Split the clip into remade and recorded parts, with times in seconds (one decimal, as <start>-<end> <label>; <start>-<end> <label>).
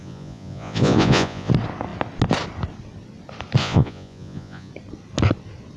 0.0-1.5 remade; 1.5-3.6 recorded; 3.6-4.7 remade; 4.7-5.8 recorded